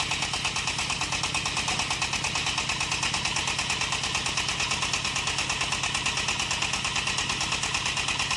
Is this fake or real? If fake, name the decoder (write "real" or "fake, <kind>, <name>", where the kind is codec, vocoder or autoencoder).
real